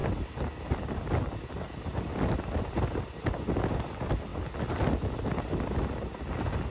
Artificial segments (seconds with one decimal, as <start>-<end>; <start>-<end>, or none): none